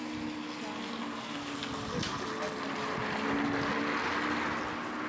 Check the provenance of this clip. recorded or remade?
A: recorded